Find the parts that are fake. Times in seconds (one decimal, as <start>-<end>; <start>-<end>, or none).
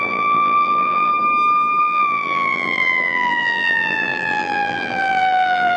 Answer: 0.0-1.1; 1.8-5.8